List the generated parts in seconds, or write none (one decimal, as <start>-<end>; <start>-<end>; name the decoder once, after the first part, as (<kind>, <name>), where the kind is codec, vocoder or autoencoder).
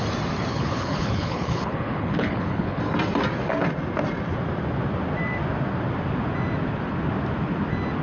0.5-2.8 (codec, HILCodec)